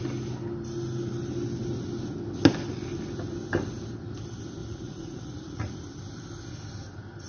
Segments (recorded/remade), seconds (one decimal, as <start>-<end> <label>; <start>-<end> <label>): 0.0-4.6 recorded; 4.6-5.7 remade; 5.7-7.3 recorded